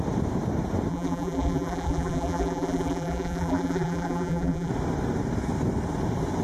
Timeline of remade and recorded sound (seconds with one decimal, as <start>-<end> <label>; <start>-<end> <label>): 0.0-0.9 recorded; 0.9-4.7 remade; 4.7-6.4 recorded